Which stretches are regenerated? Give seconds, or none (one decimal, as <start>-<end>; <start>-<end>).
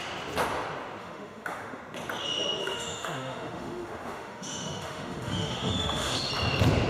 1.0-1.8; 2.6-6.3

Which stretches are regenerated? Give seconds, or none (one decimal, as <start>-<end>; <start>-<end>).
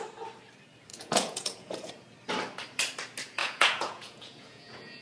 0.9-1.9; 3.4-5.0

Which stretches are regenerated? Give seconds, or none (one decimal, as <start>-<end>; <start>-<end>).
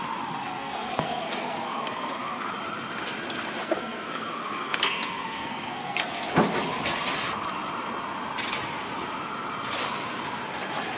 0.4-2.5; 3.6-6.4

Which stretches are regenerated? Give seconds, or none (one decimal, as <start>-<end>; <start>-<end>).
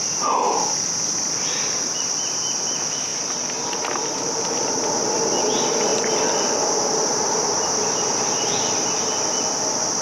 none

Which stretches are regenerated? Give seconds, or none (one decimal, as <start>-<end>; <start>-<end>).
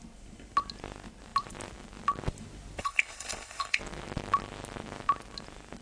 2.8-3.8